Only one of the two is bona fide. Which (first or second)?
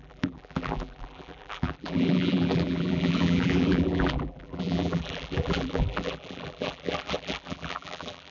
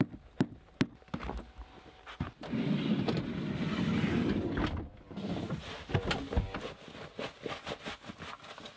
second